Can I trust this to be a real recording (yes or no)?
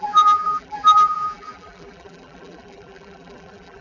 no